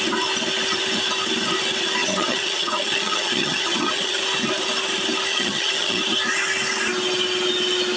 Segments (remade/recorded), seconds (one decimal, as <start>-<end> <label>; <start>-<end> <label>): 0.0-2.0 recorded; 2.0-4.2 remade; 4.2-5.3 recorded; 5.3-6.0 remade; 6.0-8.0 recorded